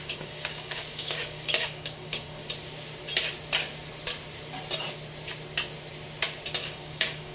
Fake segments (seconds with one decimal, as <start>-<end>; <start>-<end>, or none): 0.0-2.4; 6.6-7.3